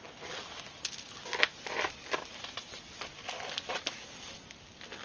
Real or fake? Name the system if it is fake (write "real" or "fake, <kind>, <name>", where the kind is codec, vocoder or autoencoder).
real